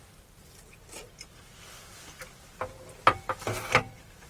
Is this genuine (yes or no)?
yes